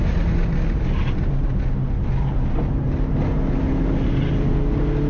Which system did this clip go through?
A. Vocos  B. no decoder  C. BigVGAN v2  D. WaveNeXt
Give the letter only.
B